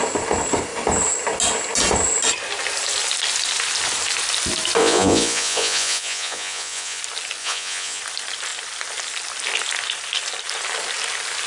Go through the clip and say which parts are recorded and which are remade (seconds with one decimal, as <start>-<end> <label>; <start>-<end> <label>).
0.0-4.8 recorded; 4.8-7.0 remade; 7.0-7.4 recorded; 7.4-8.0 remade; 8.0-11.5 recorded